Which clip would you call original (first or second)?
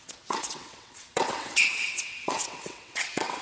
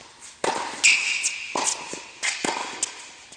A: second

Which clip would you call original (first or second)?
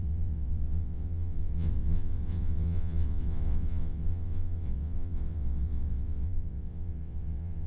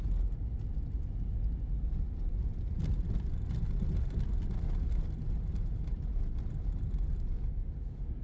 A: second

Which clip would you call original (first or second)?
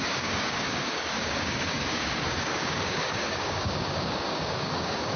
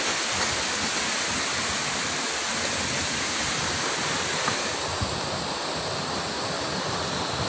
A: second